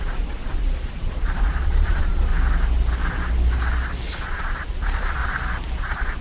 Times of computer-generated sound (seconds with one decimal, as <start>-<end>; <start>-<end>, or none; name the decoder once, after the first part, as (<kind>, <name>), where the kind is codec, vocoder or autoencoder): 0.0-2.3 (vocoder, Vocos); 4.1-5.2; 5.8-6.2